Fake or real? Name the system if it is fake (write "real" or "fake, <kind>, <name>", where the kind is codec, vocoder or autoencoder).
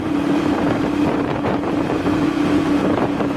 fake, vocoder, BigVGAN v2